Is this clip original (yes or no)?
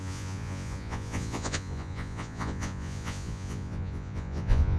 no